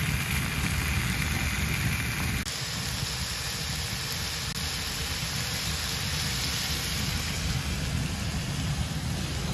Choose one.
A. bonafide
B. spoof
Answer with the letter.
A